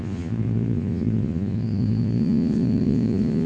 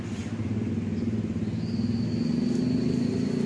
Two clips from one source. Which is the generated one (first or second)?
first